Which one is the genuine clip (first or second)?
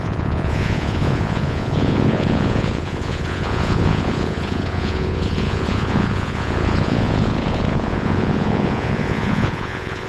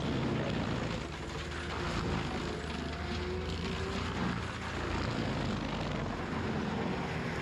second